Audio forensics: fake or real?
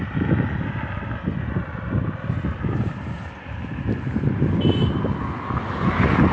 real